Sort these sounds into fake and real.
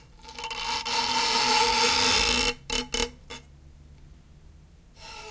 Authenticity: real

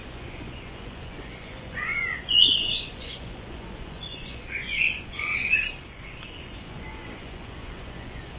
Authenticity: fake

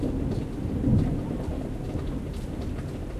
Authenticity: real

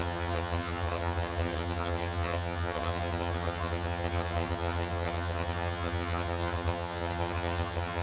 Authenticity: fake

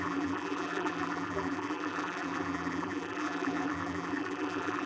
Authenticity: fake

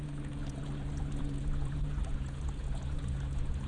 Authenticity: fake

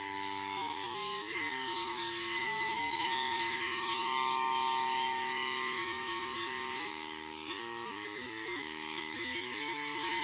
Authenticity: fake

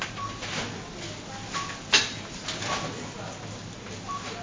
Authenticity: real